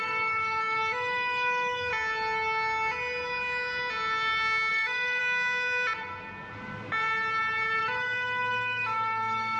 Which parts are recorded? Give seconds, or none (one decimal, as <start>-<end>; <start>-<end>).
1.9-4.7; 5.2-7.8